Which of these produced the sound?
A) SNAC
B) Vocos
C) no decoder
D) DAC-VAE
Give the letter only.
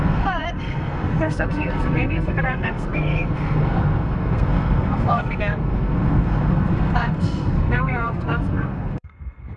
A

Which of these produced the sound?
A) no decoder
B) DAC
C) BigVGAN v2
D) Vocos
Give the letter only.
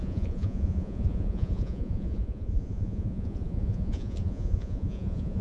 D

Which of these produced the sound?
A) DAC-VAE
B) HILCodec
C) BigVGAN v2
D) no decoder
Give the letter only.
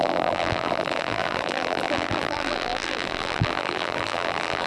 C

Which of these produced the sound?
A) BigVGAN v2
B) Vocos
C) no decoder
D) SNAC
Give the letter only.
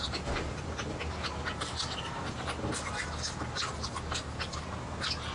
C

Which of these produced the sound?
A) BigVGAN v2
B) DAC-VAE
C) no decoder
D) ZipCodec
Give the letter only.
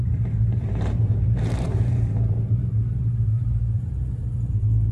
A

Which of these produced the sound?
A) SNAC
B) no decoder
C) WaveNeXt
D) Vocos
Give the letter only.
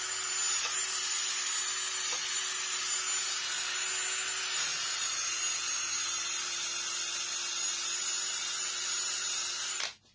B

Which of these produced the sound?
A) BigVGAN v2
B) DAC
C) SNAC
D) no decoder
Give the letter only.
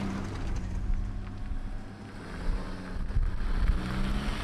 D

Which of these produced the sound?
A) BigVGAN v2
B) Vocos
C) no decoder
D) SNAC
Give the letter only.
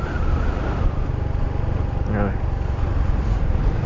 C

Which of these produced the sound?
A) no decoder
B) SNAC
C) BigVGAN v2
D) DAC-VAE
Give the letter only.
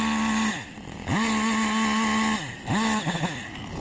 A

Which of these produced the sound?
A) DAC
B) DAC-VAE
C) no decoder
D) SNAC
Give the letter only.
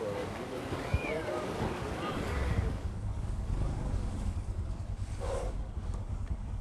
A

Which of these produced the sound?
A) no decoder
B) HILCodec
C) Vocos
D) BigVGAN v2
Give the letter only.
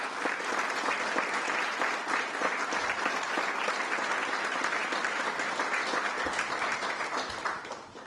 A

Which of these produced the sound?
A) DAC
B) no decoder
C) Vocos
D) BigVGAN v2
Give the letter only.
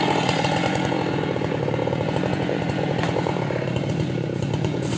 C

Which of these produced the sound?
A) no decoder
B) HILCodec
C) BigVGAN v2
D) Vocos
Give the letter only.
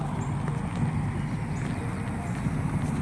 A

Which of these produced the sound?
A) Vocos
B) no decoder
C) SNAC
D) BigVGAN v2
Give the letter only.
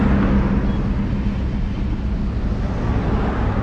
B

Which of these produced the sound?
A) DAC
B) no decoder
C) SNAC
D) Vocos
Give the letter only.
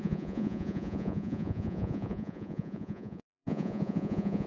D